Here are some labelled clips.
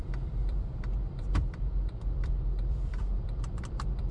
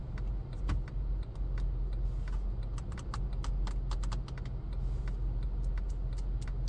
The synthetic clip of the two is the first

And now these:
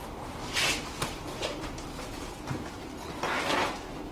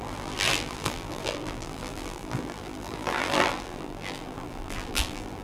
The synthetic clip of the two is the second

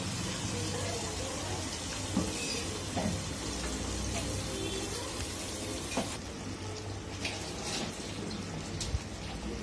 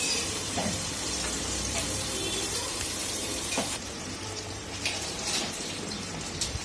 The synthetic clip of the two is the second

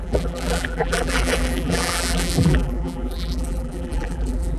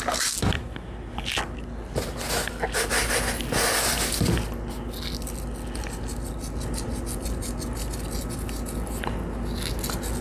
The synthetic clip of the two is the first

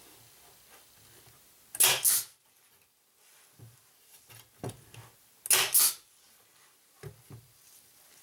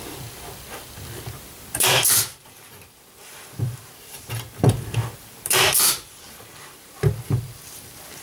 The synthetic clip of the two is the second